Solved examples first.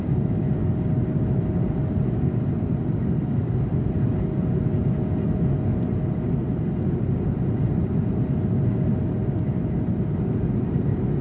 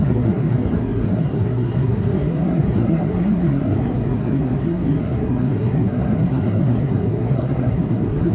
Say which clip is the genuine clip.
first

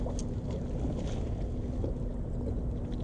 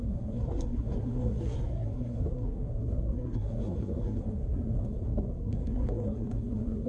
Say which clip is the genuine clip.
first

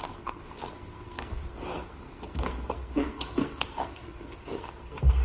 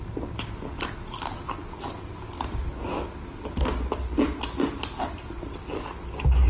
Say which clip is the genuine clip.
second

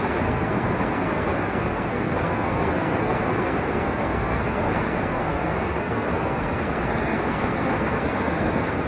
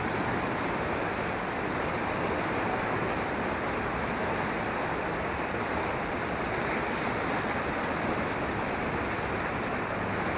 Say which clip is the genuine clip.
second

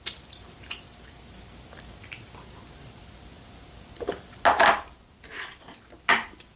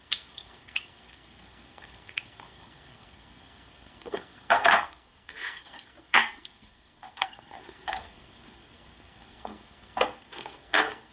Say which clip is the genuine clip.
first